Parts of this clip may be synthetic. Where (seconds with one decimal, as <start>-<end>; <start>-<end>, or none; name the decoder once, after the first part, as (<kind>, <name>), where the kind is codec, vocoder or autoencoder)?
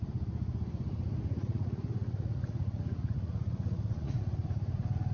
1.3-4.4 (vocoder, Vocos)